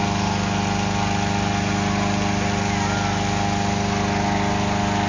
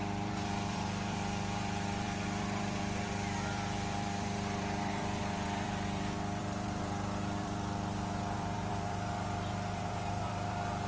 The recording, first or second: first